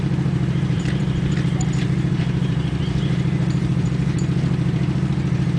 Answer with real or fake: fake